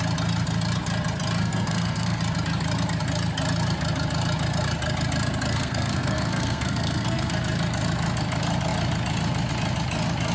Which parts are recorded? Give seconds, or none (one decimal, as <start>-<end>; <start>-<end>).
0.0-1.4; 2.2-5.5; 7.3-10.3